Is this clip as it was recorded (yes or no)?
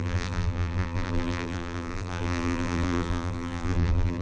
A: no